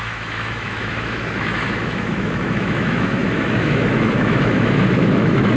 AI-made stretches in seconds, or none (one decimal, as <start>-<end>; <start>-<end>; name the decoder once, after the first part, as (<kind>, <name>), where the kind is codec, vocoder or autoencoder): 0.0-5.6 (autoencoder, DAC-VAE)